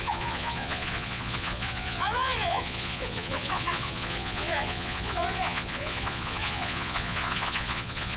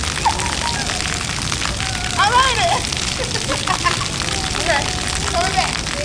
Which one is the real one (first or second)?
second